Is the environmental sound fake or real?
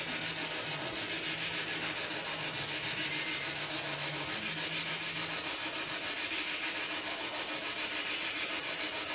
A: real